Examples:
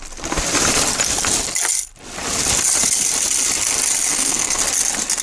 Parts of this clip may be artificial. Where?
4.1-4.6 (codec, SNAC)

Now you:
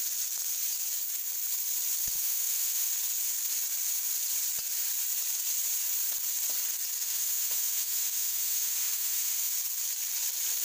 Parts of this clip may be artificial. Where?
2.2-2.9 (autoencoder, DAC-VAE); 7.0-9.5

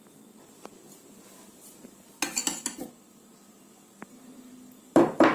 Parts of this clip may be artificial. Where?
none

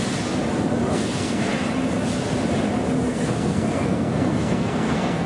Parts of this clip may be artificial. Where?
0.9-1.5 (codec, SNAC); 3.1-5.3

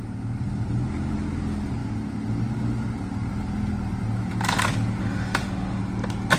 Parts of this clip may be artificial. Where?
5.0-5.8 (autoencoder, DAC-VAE)